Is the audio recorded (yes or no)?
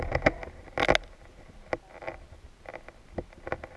yes